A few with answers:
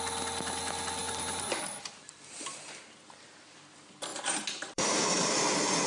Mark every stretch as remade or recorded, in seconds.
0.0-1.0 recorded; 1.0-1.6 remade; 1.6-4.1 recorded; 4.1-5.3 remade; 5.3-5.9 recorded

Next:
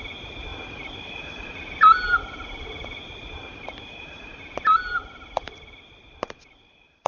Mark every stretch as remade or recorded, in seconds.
0.0-7.1 remade

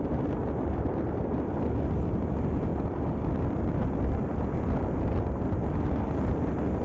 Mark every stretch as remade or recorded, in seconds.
0.0-0.4 recorded; 0.4-1.3 remade; 1.3-3.8 recorded; 3.8-4.4 remade; 4.4-6.8 recorded